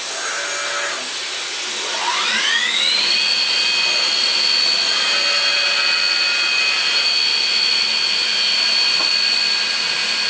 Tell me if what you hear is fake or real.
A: real